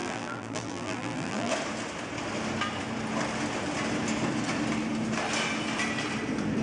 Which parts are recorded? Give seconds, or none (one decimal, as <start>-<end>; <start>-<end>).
1.5-6.6